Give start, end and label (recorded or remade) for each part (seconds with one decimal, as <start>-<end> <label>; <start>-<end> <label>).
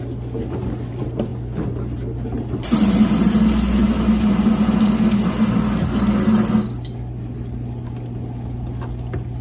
0.0-9.4 recorded